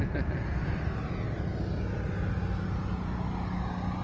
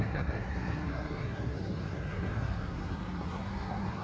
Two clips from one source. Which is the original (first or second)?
first